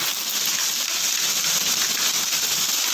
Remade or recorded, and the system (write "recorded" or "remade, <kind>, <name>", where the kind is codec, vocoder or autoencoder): recorded